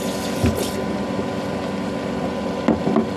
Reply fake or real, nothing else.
real